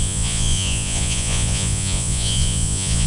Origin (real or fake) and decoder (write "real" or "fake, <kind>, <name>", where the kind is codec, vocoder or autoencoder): fake, vocoder, Vocos